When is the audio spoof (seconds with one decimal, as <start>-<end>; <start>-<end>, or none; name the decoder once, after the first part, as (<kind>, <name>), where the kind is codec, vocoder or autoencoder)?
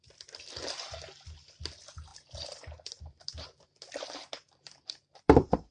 2.1-5.7 (vocoder, BigVGAN v2)